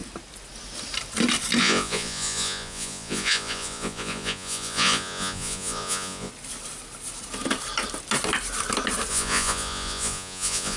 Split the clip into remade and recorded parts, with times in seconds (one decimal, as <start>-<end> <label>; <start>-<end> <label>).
0.0-1.6 recorded; 1.6-6.3 remade; 6.3-9.1 recorded; 9.1-10.8 remade